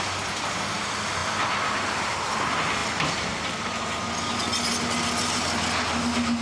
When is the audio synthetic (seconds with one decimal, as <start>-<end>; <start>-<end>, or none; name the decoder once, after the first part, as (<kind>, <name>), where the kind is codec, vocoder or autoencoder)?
2.8-4.1 (vocoder, BigVGAN v2)